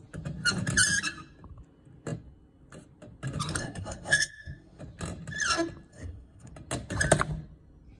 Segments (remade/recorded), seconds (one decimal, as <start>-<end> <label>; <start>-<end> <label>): 0.0-3.6 recorded; 3.6-4.8 remade; 4.8-5.9 recorded; 5.9-6.5 remade; 6.5-8.0 recorded